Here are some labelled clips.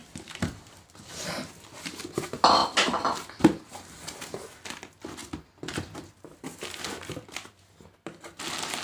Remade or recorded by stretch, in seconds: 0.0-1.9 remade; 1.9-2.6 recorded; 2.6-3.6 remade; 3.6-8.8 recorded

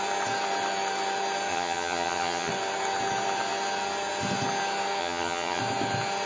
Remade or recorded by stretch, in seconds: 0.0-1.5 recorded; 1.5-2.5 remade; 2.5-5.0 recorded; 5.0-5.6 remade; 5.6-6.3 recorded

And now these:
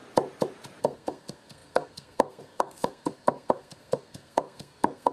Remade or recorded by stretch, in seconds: 0.0-0.8 recorded; 0.8-5.1 remade